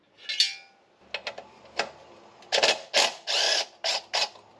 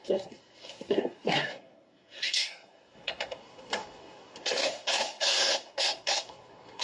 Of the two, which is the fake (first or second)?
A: second